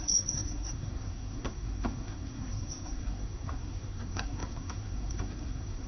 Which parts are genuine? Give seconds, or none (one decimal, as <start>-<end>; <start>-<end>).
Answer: none